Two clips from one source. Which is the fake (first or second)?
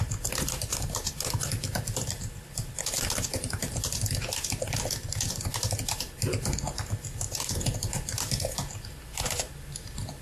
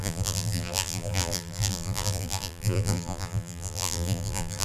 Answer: second